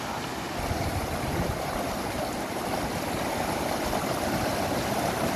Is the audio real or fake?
real